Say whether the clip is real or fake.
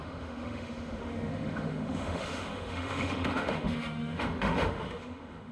fake